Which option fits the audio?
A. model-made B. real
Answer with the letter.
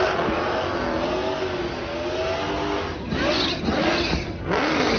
B